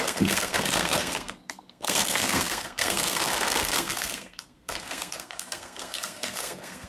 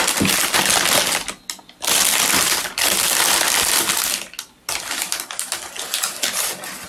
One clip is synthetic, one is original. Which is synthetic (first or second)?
first